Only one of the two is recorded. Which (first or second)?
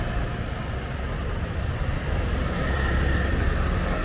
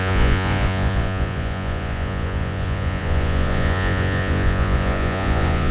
first